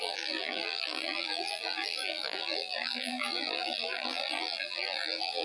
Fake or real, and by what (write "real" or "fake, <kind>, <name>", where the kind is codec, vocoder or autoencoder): fake, vocoder, BigVGAN v2